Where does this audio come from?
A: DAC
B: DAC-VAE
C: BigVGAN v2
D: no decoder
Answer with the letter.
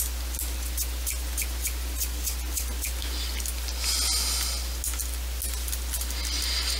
D